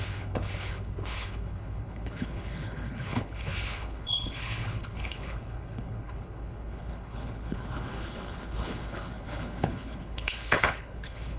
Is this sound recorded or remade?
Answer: remade